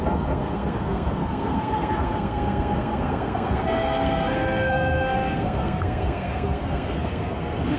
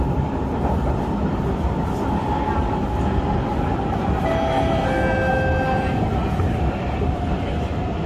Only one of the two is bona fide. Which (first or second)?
second